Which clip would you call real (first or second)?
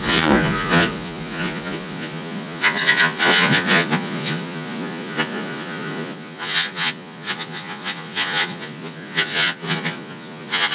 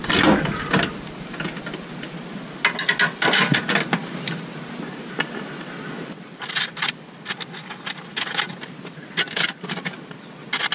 second